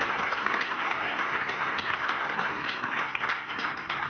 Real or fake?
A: fake